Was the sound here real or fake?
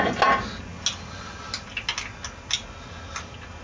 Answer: real